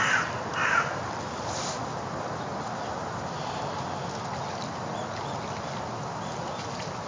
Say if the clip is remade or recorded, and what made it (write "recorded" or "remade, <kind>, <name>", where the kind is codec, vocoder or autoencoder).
recorded